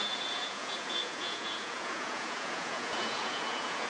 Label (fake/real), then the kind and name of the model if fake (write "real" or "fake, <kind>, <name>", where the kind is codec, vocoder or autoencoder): fake, vocoder, Vocos